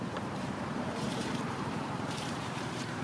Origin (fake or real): fake